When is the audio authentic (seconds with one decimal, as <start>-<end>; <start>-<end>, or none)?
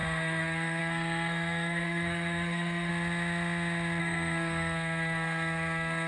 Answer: 2.9-4.0